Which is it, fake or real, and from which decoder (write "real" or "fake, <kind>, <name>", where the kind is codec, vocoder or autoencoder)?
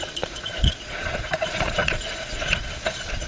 fake, vocoder, Vocos